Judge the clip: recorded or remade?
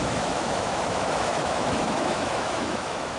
remade